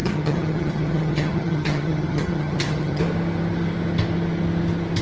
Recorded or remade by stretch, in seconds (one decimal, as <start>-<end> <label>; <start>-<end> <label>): 0.0-3.0 remade; 3.0-5.0 recorded